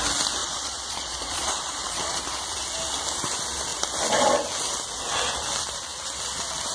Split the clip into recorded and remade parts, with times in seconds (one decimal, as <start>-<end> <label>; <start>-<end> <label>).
0.0-0.4 recorded; 0.4-2.2 remade; 2.2-6.7 recorded